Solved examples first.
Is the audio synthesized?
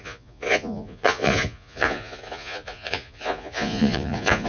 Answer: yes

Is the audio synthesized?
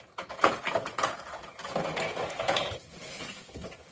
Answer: yes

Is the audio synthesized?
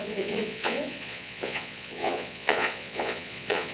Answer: yes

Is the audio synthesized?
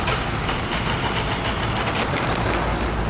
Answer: no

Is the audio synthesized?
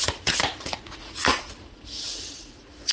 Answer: yes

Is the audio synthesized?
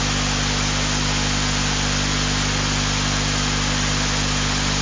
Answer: no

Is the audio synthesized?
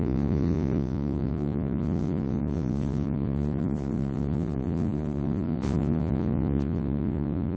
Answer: yes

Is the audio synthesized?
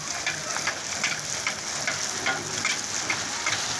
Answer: no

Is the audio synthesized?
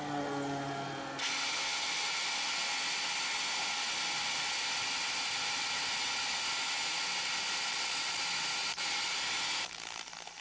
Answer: no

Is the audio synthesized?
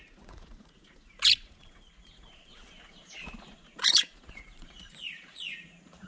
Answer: yes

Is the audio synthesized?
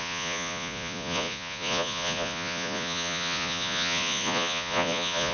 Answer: yes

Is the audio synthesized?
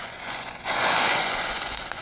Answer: yes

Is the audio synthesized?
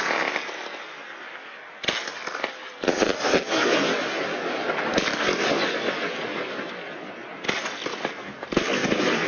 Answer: no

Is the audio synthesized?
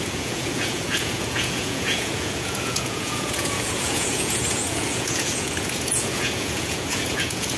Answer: yes